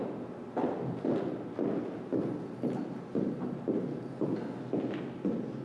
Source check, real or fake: real